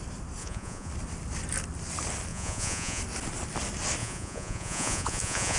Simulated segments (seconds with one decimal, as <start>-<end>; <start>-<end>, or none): 0.4-0.9; 2.3-3.0; 4.0-5.6